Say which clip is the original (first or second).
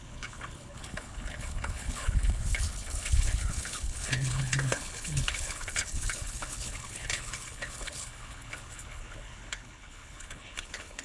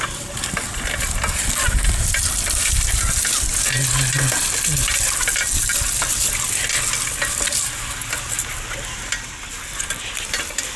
second